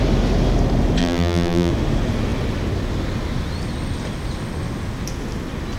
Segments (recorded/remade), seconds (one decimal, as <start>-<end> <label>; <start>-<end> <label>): 0.0-1.0 recorded; 1.0-1.7 remade; 1.7-5.8 recorded